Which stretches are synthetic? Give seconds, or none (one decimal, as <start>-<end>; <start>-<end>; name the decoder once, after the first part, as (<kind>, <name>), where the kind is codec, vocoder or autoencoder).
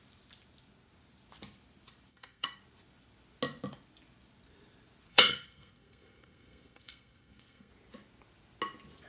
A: 2.1-2.6 (codec, SNAC); 5.1-7.7